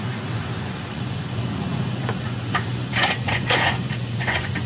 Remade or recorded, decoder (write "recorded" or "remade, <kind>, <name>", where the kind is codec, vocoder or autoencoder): remade, vocoder, Vocos